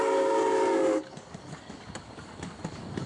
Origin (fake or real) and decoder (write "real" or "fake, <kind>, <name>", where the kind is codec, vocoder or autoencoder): fake, codec, DAC